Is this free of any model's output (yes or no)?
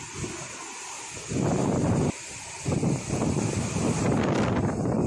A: yes